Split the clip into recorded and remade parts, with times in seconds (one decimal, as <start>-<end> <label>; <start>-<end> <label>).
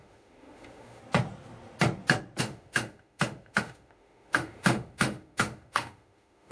0.0-1.0 remade; 1.0-2.4 recorded; 2.4-6.5 remade